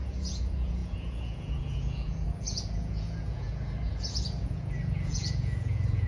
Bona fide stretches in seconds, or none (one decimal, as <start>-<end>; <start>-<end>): none